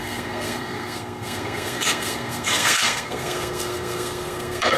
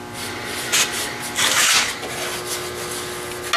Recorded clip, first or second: second